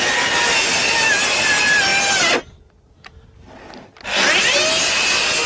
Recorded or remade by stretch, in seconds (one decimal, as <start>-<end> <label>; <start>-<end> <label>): 0.0-5.5 recorded